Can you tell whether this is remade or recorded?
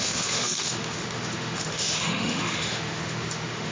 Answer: remade